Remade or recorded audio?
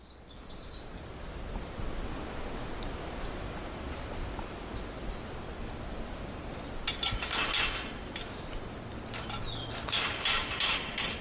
recorded